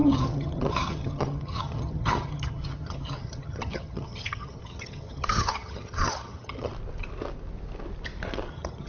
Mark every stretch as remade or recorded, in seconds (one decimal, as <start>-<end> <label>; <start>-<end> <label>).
0.0-6.7 remade; 6.7-8.5 recorded; 8.5-8.9 remade